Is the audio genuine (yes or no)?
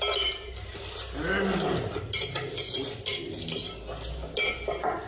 yes